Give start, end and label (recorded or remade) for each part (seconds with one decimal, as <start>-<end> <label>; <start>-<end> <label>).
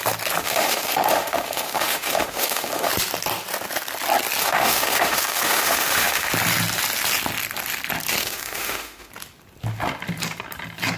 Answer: 0.0-0.4 recorded; 0.4-2.9 remade; 2.9-4.4 recorded; 4.4-6.3 remade; 6.3-8.2 recorded; 8.2-9.1 remade; 9.1-11.0 recorded